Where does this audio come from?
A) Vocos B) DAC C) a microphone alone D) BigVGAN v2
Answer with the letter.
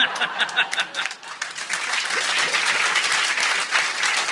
C